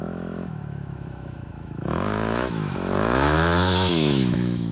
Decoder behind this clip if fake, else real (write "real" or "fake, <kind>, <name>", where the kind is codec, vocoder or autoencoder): fake, autoencoder, DAC-VAE